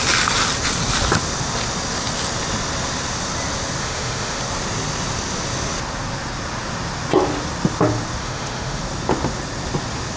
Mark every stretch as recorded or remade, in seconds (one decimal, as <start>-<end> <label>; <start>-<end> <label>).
0.0-3.8 recorded; 3.8-4.4 remade; 4.4-8.2 recorded; 8.2-8.8 remade; 8.8-10.2 recorded